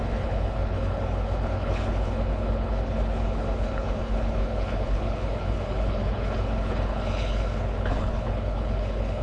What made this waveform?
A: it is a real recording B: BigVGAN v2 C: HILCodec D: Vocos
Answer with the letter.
C